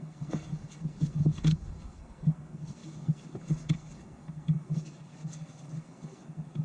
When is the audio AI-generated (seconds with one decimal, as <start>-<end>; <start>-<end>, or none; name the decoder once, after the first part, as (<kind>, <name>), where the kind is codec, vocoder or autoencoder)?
0.0-6.6 (codec, SNAC)